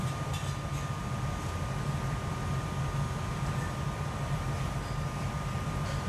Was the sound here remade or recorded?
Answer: recorded